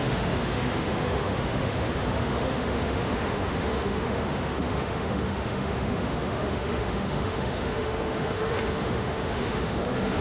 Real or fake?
fake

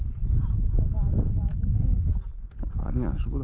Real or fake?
real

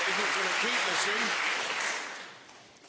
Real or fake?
real